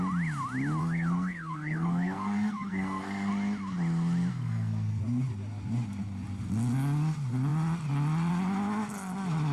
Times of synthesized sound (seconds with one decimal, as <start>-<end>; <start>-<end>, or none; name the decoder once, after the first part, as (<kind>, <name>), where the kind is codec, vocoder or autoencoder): 0.8-3.3 (codec, SNAC); 4.3-5.0